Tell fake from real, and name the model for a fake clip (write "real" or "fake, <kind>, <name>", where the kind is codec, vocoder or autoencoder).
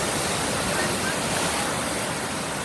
real